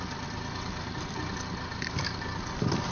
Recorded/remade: recorded